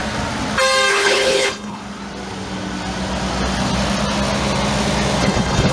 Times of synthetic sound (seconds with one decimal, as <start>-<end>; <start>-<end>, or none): 0.9-1.8; 5.2-5.7